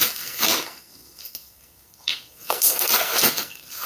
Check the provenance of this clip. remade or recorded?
remade